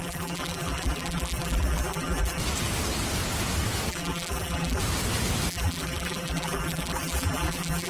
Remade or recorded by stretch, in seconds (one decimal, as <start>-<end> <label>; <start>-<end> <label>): 0.0-2.4 remade; 2.4-3.9 recorded; 3.9-4.8 remade; 4.8-5.5 recorded; 5.5-7.9 remade